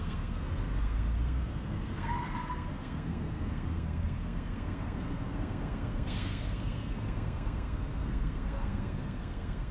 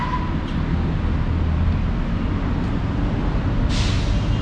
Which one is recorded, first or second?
second